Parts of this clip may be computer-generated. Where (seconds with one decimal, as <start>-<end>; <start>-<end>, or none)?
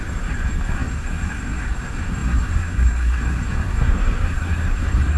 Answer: 0.0-5.2